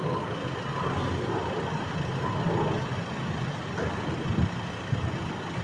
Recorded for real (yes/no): yes